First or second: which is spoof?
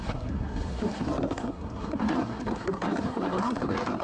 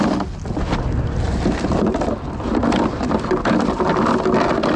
first